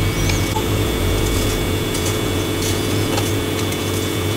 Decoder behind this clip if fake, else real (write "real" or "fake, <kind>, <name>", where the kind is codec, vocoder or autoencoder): fake, vocoder, Vocos